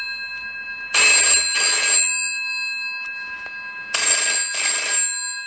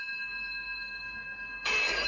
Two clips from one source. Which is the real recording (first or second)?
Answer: first